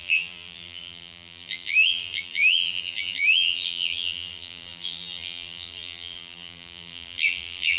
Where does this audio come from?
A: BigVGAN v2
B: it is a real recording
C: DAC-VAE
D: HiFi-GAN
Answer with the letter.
A